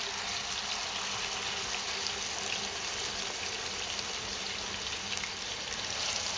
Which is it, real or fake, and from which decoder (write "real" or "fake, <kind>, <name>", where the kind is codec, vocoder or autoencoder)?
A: real